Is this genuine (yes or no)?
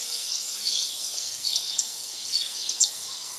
no